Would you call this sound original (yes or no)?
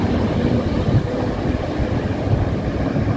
yes